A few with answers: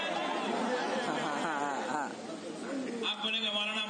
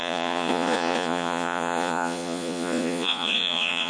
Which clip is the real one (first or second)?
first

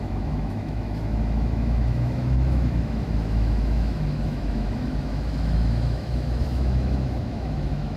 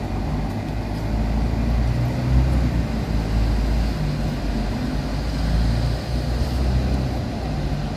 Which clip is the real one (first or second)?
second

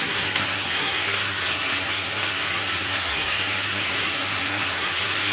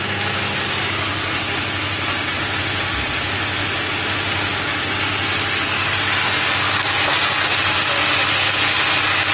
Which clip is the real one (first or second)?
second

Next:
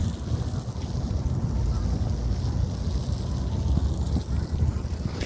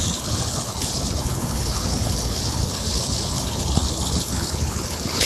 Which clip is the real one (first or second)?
first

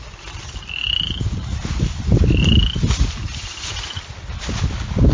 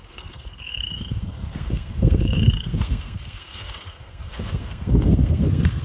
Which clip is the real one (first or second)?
first